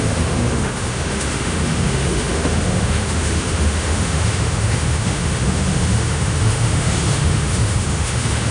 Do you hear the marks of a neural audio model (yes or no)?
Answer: yes